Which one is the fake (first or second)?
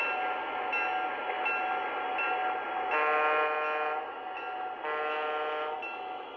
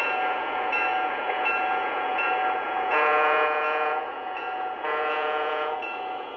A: second